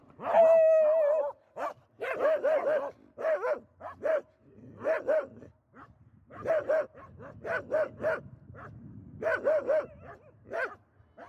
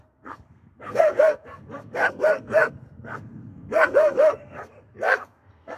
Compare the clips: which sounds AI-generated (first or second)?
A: second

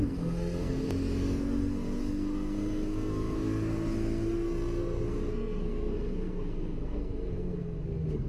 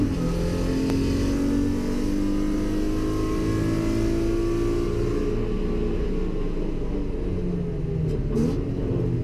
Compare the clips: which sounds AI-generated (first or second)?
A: first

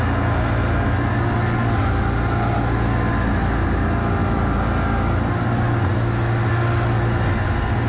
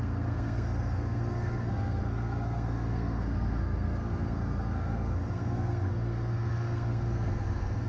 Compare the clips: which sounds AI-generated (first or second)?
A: second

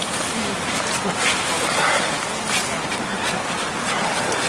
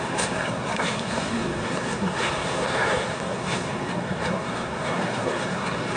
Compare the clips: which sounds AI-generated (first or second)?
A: second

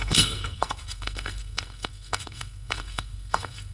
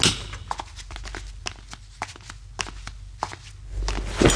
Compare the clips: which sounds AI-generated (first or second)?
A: first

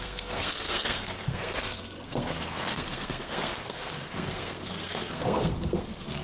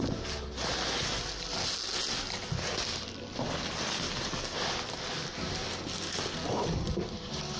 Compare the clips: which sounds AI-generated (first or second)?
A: first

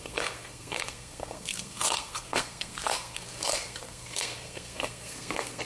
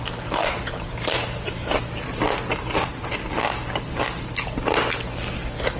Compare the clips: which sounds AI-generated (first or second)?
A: first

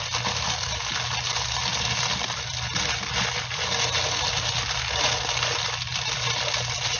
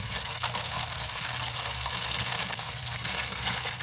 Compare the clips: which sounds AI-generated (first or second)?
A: second